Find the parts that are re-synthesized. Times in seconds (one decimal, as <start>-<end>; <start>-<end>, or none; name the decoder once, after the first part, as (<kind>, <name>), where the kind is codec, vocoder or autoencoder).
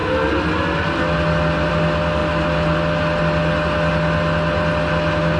none